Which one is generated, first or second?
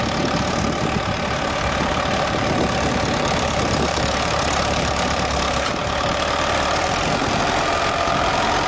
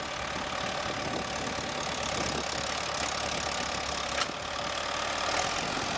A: first